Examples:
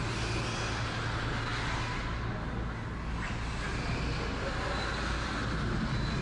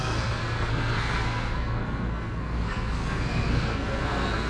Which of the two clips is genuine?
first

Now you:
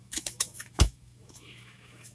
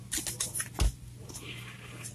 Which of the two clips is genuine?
second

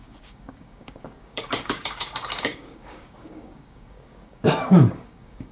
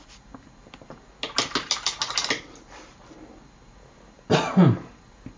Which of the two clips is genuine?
second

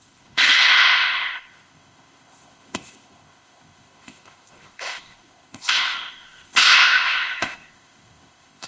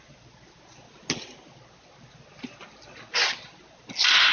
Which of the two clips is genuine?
second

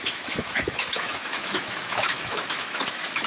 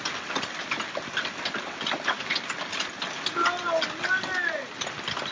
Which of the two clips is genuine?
second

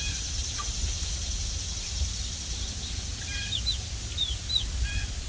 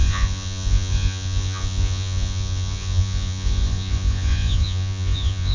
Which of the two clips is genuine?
first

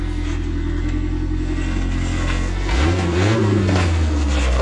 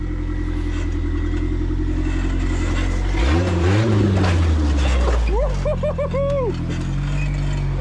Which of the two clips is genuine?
second